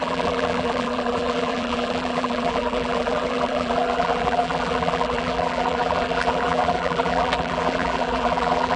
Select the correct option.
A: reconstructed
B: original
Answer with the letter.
A